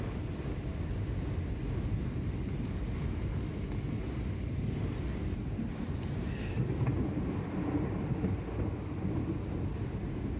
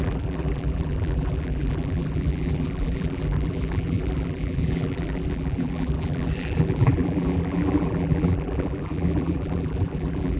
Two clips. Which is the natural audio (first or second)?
first